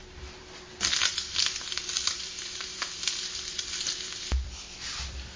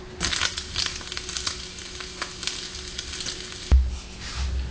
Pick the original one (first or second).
second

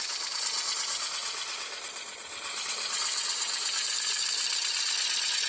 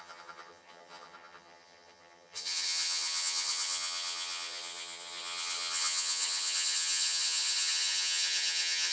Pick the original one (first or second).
first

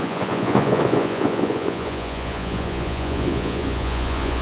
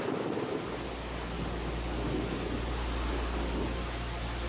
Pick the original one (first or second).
second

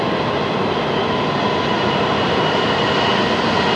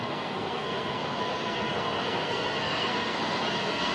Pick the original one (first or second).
first